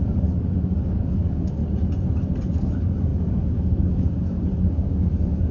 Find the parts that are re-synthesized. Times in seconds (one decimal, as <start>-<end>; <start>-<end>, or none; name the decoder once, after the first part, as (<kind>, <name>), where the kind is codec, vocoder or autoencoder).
0.0-1.6 (codec, DAC); 2.5-5.5

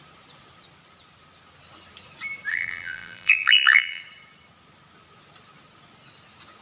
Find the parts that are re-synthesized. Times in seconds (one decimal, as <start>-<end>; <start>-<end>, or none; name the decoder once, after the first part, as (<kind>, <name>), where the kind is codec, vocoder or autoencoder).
2.5-4.0 (vocoder, BigVGAN v2)

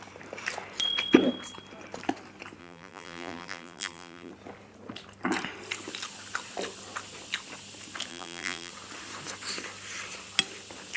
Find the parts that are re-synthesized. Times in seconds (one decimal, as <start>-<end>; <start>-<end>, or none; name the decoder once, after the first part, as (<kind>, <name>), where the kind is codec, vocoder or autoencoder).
2.6-4.3 (vocoder, BigVGAN v2); 8.1-8.7

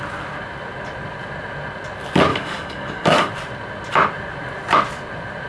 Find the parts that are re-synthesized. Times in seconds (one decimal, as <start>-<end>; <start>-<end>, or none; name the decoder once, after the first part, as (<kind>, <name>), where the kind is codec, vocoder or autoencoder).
2.3-3.3 (codec, DAC)

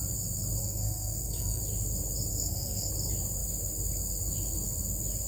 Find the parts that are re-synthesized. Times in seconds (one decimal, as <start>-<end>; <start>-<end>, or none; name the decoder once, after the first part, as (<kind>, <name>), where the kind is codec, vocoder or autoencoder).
0.6-1.6 (codec, SNAC); 2.3-2.9